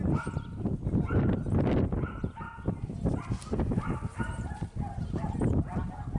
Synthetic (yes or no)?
no